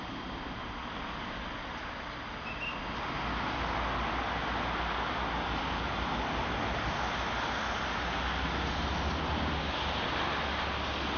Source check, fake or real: real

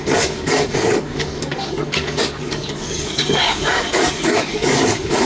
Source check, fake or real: fake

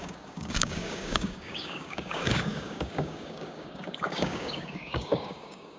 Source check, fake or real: fake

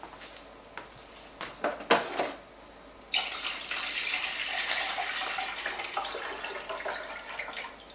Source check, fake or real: real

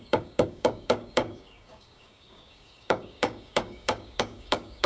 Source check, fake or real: fake